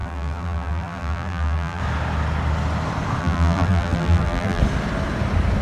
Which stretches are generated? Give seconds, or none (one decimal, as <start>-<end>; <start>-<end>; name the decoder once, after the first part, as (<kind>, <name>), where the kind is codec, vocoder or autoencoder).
0.0-1.8 (vocoder, BigVGAN v2); 3.2-4.6